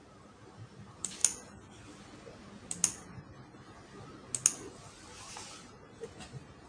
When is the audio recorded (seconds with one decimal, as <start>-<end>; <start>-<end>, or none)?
1.2-5.2